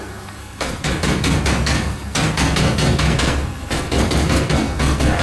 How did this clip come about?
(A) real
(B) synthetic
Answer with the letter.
B